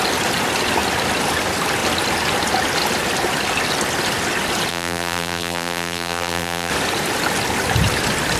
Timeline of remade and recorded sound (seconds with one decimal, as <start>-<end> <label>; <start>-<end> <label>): 0.0-4.7 recorded; 4.7-6.7 remade; 6.7-8.4 recorded